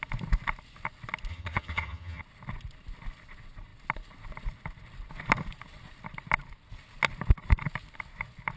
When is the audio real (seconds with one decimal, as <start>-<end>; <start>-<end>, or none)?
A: 0.0-1.3; 2.2-8.6